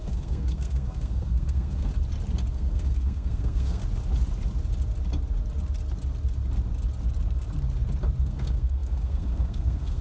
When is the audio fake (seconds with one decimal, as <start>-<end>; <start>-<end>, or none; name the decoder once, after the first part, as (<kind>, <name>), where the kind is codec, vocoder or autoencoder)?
0.0-1.9 (codec, SNAC); 2.5-3.8; 8.2-10.0